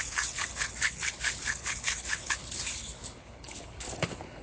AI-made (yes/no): yes